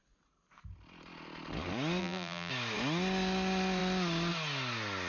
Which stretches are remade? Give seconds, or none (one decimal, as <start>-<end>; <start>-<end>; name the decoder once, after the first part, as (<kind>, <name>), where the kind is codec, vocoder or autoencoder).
2.0-2.5 (vocoder, BigVGAN v2)